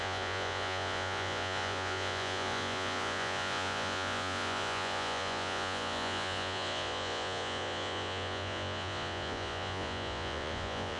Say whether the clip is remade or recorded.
remade